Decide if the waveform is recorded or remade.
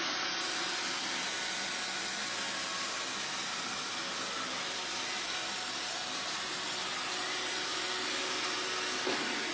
recorded